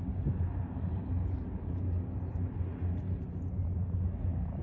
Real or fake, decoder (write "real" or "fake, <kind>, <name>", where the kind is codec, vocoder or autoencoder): real